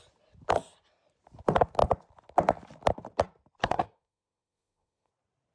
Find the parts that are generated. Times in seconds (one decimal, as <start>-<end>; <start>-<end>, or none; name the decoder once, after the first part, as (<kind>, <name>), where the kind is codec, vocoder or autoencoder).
3.6-5.1 (codec, SNAC)